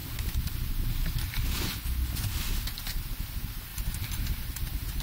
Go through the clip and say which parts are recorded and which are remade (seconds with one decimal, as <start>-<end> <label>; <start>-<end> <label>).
0.0-3.7 recorded; 3.7-5.0 remade